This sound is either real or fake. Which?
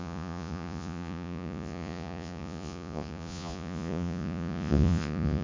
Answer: fake